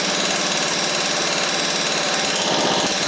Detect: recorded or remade recorded